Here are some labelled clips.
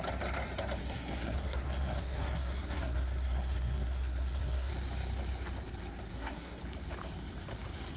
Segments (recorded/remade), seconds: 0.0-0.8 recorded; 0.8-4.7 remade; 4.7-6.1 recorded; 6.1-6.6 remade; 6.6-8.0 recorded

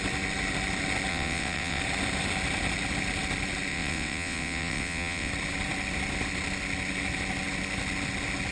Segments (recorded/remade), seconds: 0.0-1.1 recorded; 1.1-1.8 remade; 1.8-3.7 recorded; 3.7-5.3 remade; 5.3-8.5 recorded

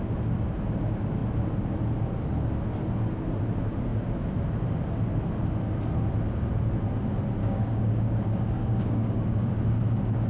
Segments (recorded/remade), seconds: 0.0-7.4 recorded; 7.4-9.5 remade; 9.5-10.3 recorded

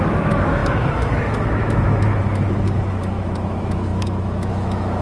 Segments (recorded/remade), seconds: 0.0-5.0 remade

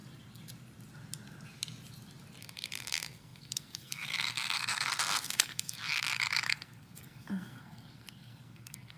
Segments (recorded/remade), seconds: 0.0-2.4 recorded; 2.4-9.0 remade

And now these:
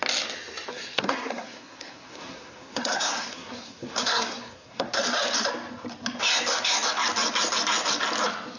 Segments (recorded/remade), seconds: 0.0-0.7 recorded; 0.7-5.0 remade; 5.0-8.6 recorded